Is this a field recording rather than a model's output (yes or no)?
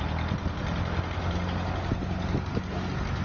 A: yes